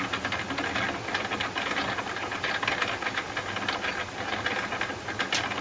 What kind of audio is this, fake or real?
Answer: real